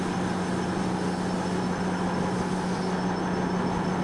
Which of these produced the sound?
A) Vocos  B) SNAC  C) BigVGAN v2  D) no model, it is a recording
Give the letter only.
D